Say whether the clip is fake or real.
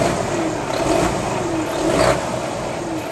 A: real